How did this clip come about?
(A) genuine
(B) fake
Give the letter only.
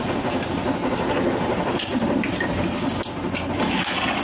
A